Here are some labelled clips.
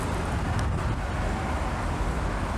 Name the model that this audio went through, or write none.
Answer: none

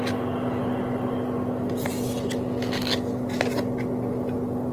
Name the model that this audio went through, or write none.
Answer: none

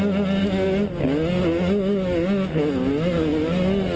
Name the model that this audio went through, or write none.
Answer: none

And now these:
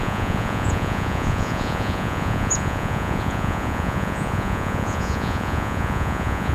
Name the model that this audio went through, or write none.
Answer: vocoder, Vocos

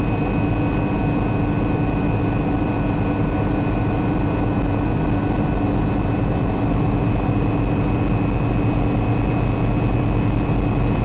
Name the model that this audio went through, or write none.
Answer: none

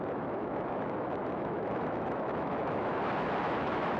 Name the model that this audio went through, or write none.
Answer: autoencoder, DAC-VAE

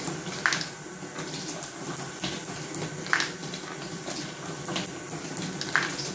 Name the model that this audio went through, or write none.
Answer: none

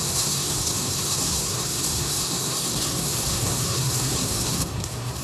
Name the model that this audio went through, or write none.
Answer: codec, SNAC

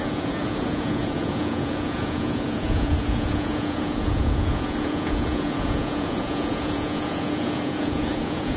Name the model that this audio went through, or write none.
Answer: vocoder, Vocos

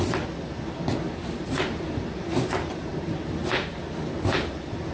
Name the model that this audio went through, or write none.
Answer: none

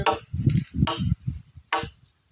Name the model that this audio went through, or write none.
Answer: none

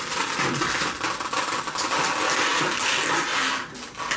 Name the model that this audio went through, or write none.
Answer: none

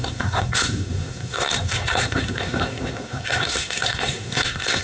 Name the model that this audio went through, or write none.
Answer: codec, SNAC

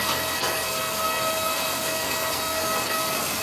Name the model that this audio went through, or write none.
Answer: codec, SNAC